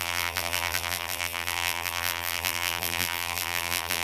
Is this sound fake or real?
fake